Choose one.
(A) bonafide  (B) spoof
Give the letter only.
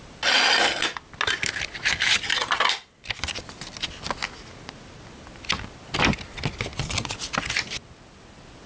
A